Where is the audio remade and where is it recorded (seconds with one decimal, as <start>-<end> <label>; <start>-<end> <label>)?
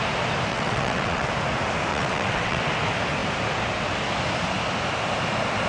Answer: 0.0-0.5 recorded; 0.5-1.3 remade; 1.3-1.9 recorded; 1.9-2.6 remade; 2.6-5.7 recorded